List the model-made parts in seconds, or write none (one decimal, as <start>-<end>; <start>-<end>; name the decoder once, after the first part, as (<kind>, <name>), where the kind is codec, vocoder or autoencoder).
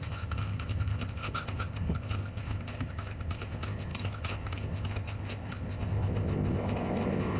0.0-7.4 (codec, ZipCodec)